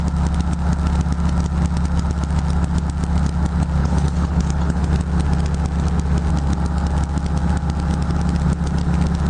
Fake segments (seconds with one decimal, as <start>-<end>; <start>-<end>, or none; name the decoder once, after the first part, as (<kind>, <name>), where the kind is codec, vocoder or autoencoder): 3.8-4.9 (codec, HILCodec)